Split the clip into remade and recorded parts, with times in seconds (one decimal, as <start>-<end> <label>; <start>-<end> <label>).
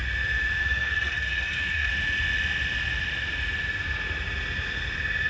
0.0-0.6 recorded; 0.6-1.9 remade; 1.9-5.3 recorded